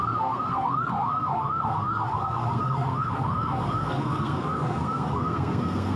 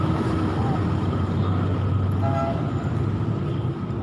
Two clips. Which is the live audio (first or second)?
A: second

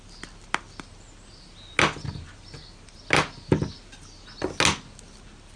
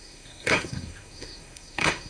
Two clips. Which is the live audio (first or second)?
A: first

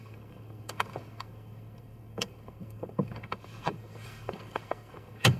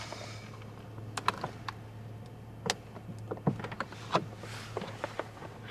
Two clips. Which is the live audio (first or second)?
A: second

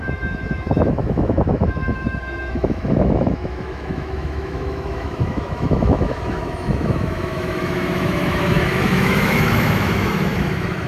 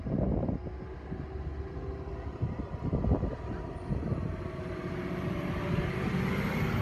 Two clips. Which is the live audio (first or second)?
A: second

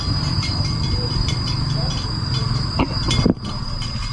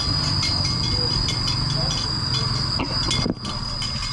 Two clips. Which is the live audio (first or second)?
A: second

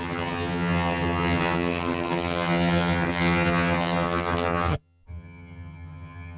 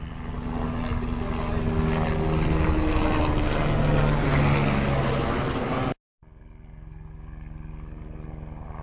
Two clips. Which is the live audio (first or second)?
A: second